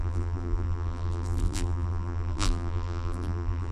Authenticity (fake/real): fake